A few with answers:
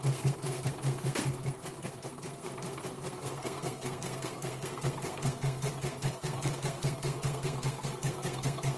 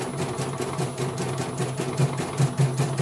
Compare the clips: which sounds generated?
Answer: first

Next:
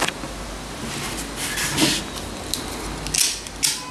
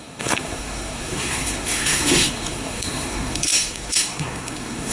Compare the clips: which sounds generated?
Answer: second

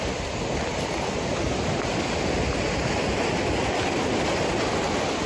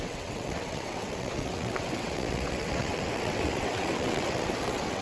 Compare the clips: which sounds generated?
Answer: second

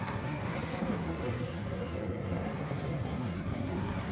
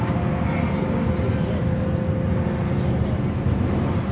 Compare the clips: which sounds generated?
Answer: first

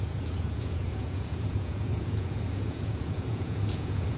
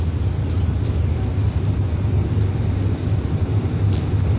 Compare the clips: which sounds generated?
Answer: first